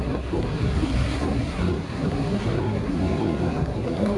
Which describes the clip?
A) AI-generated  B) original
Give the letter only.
A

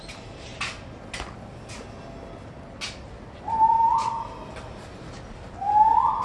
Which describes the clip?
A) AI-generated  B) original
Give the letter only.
B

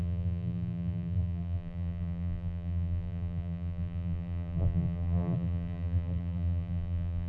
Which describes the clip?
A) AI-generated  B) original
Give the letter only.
A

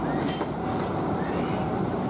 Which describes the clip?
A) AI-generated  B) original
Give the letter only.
B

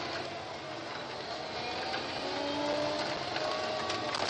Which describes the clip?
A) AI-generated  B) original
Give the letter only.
B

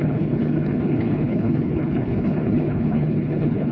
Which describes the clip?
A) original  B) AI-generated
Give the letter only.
B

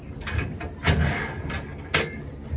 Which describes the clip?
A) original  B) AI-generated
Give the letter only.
A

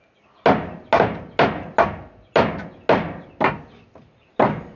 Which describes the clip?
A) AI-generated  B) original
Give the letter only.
B